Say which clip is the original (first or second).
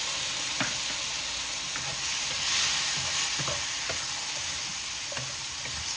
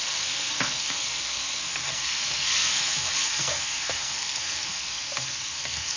first